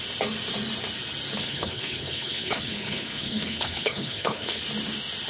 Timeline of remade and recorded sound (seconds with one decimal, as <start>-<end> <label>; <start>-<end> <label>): 0.0-1.4 recorded; 1.4-4.6 remade; 4.6-5.3 recorded